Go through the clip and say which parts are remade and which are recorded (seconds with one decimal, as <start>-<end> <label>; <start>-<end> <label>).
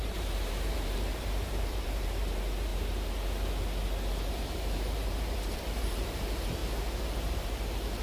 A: 0.0-2.7 remade; 2.7-4.3 recorded; 4.3-6.6 remade; 6.6-7.3 recorded; 7.3-8.0 remade